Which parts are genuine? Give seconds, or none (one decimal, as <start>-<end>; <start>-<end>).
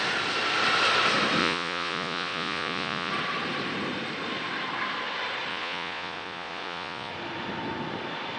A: 0.0-1.4; 3.1-5.5; 7.1-8.4